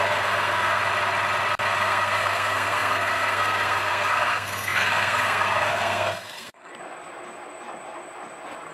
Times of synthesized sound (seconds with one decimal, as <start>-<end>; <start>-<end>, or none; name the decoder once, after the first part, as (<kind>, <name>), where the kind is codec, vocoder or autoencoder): 0.0-0.8 (codec, SNAC); 1.8-6.7